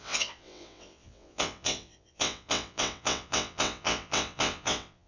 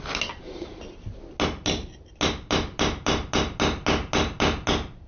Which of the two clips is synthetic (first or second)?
first